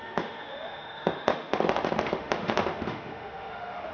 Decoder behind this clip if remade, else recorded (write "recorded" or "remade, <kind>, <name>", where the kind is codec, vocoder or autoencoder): remade, autoencoder, DAC-VAE